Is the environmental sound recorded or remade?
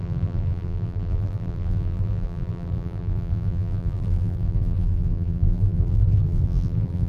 remade